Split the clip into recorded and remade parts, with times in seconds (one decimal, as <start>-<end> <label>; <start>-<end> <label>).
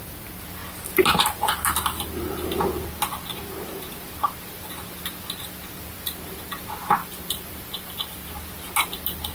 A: 0.0-7.0 recorded; 7.0-8.3 remade; 8.3-9.3 recorded